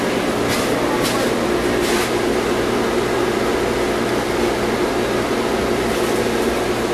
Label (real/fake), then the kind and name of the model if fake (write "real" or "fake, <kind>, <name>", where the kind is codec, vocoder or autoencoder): real